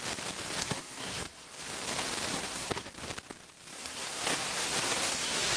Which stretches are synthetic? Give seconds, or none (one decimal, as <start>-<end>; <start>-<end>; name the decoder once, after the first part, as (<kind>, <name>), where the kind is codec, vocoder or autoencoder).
0.6-1.5 (codec, SNAC); 2.3-2.9; 3.7-5.6